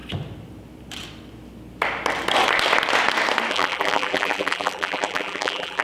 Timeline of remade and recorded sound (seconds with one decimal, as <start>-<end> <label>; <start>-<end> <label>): 0.0-3.5 recorded; 3.5-5.8 remade